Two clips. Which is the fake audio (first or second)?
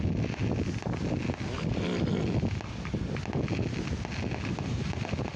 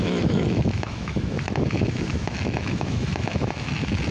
second